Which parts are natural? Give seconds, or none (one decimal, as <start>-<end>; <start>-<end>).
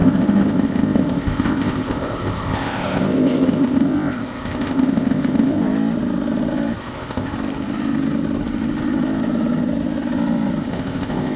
5.6-6.8; 7.3-10.7